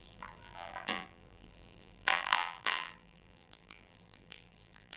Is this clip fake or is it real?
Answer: fake